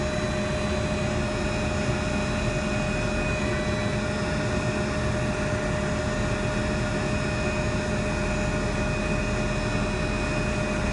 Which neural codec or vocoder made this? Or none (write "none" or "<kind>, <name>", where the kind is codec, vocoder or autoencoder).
none